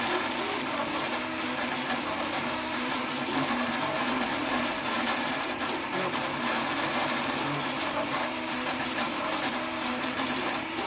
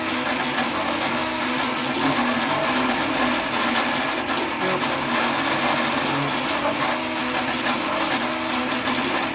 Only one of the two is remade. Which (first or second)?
first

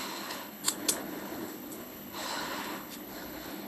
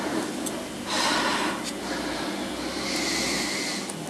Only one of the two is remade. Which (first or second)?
first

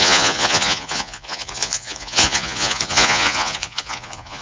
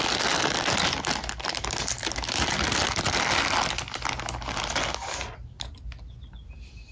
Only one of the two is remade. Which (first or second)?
first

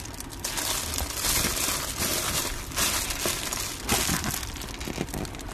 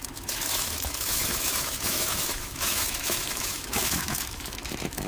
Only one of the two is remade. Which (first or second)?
second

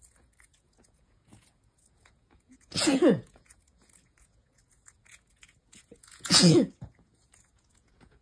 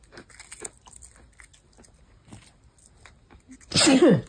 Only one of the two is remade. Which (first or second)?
first